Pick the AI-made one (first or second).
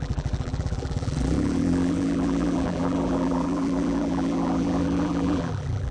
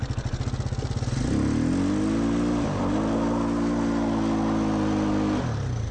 first